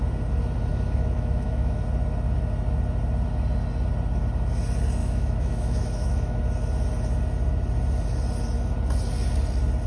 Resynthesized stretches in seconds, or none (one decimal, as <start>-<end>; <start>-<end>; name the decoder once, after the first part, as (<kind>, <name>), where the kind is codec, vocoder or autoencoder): 0.7-1.8 (autoencoder, DAC-VAE); 5.0-6.4